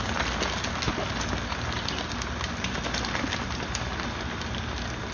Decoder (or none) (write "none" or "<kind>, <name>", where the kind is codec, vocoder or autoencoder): none